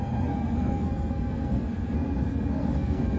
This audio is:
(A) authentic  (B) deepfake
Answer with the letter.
B